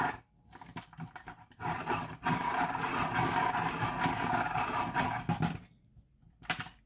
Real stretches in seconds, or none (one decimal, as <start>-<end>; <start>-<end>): 0.0-6.9